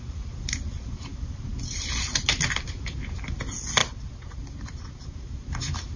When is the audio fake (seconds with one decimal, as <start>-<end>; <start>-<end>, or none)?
none